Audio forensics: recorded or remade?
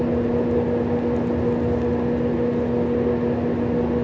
recorded